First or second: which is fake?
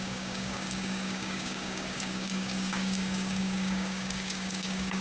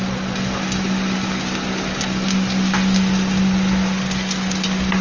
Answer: first